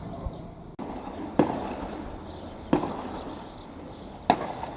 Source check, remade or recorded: recorded